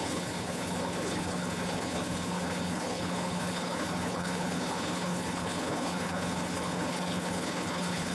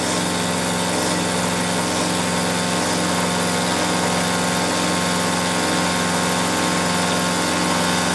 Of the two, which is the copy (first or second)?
first